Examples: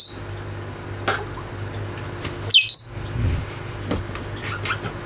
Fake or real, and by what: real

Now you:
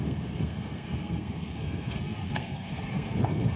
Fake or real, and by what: fake, codec, SNAC